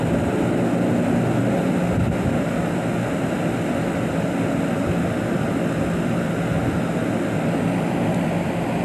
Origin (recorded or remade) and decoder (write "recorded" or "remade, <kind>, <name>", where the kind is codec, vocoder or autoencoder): recorded